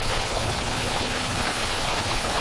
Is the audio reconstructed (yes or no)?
yes